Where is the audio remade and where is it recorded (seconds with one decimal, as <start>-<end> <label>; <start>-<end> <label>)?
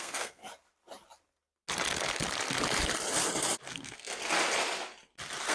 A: 0.0-0.4 remade; 0.4-3.7 recorded; 3.7-4.2 remade; 4.2-5.5 recorded